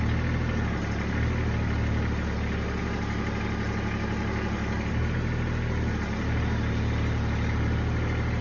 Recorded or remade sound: recorded